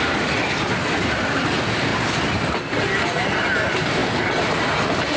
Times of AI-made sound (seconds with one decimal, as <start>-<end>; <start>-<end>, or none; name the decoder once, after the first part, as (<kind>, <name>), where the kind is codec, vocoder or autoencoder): none